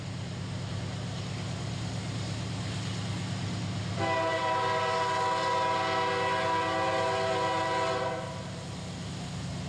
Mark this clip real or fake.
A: real